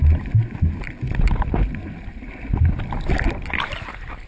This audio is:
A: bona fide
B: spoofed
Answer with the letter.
A